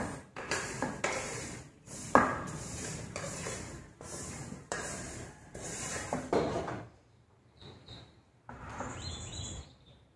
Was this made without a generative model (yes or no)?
no